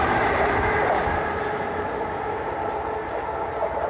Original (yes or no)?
yes